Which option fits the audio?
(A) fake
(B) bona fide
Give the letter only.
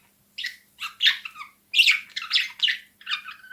B